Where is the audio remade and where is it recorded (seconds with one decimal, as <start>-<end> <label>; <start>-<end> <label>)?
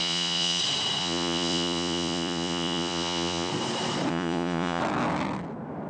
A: 0.0-0.6 remade; 0.6-1.0 recorded; 1.0-3.5 remade; 3.5-4.1 recorded; 4.1-4.8 remade; 4.8-5.9 recorded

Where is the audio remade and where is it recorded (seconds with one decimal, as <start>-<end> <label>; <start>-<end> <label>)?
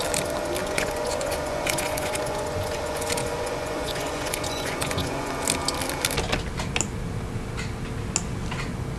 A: 0.0-0.6 recorded; 0.6-5.3 remade; 5.3-9.0 recorded